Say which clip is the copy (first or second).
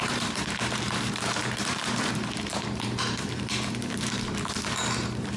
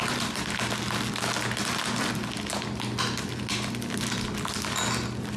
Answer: first